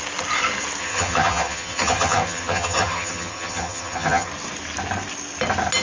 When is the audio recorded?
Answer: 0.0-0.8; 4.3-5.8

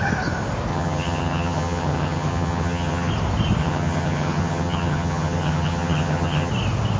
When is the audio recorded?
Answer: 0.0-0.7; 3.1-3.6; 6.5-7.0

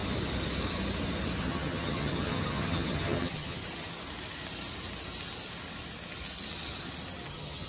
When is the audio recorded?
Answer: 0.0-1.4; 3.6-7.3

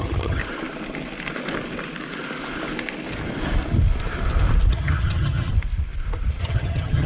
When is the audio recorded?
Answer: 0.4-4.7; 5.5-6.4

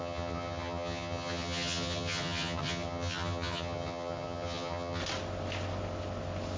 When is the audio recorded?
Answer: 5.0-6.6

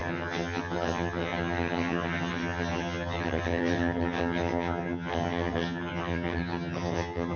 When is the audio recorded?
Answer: none

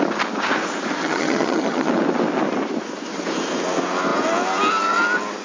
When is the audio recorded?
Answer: 0.0-1.0; 1.9-5.4